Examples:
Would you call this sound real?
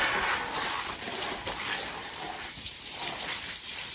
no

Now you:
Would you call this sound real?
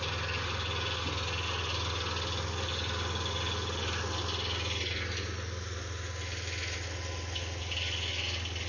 yes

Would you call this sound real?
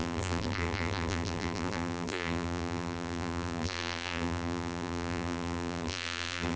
no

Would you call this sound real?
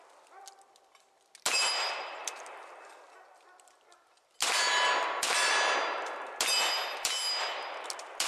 yes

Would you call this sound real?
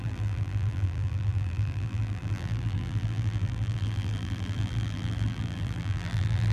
no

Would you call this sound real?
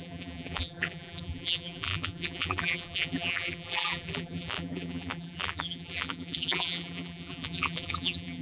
no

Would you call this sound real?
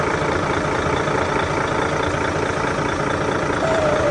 yes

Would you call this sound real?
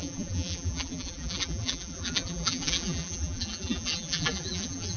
no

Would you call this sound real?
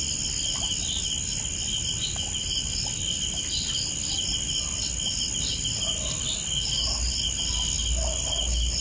yes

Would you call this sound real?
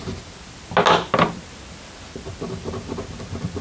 yes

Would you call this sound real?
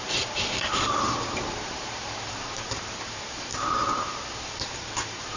no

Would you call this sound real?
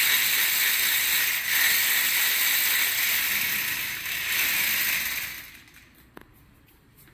yes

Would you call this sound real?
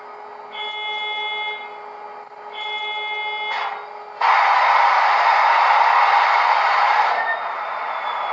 yes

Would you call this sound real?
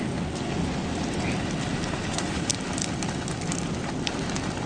yes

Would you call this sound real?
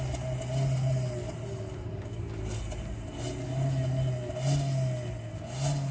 yes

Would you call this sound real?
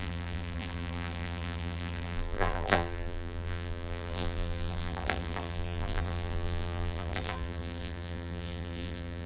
no